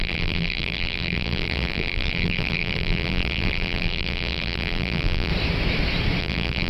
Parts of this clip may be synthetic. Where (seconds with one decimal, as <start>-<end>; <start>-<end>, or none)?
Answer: 0.0-5.3; 6.2-6.7